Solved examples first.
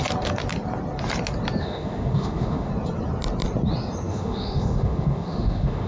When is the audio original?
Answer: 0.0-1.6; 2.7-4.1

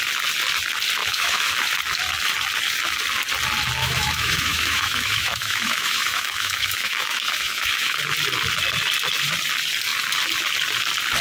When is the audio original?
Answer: 0.0-1.0; 1.5-3.8; 8.0-11.2

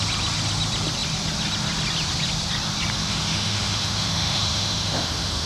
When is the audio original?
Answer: 0.0-3.0

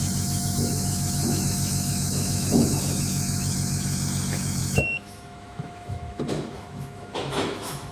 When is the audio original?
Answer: none